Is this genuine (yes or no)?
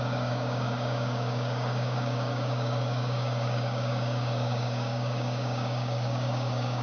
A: no